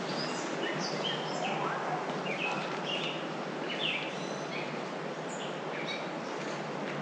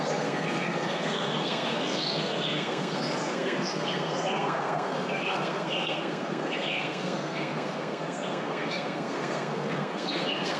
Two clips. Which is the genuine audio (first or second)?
first